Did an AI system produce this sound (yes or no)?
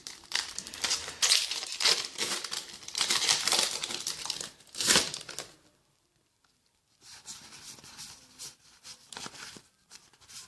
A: yes